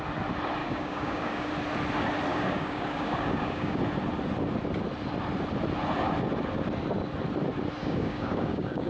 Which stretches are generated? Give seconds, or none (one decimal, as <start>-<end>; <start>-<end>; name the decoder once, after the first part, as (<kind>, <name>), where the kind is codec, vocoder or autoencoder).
0.6-1.5 (codec, DAC); 2.3-3.8; 7.8-8.9